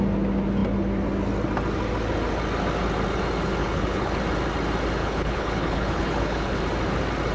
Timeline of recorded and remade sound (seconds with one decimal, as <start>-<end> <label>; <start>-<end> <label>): 0.0-3.6 recorded; 3.6-4.2 remade; 4.2-5.0 recorded; 5.0-6.6 remade; 6.6-7.3 recorded